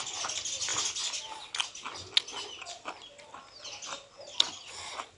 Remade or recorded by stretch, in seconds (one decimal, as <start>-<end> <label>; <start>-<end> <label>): 0.0-5.2 recorded